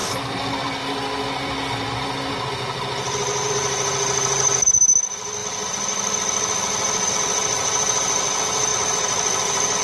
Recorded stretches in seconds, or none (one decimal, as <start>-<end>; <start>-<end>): 0.0-8.7